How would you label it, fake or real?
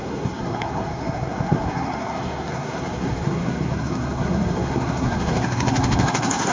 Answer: fake